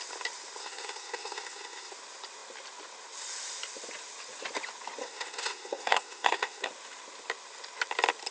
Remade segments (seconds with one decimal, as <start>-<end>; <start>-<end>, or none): 0.6-1.9; 5.0-6.7